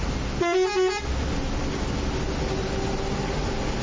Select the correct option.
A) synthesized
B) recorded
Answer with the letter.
B